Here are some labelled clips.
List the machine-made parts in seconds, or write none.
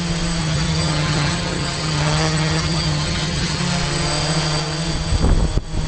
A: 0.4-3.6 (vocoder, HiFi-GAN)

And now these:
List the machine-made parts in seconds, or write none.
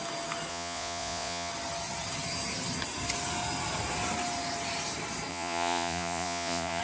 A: 0.5-1.5 (vocoder, Vocos); 5.3-6.8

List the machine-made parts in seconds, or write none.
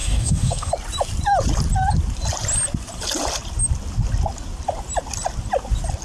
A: 0.0-0.7 (codec, DAC)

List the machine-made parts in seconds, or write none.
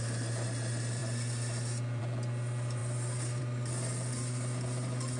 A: none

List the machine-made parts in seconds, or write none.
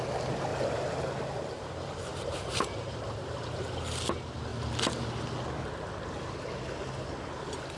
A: 0.5-3.8 (vocoder, BigVGAN v2)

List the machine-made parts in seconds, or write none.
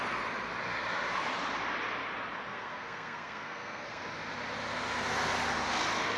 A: 2.5-4.0 (codec, SNAC)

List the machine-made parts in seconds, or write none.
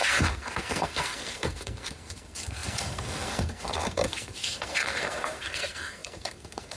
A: 0.0-6.8 (codec, SNAC)